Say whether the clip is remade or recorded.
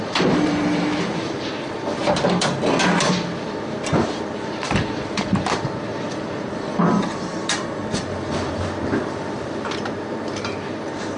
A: remade